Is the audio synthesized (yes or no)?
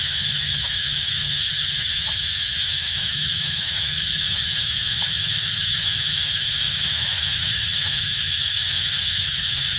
yes